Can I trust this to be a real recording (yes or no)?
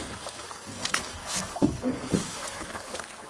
no